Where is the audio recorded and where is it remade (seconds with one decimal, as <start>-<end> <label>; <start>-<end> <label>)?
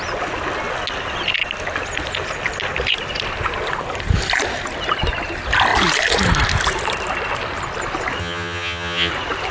0.0-8.2 recorded; 8.2-9.1 remade; 9.1-9.5 recorded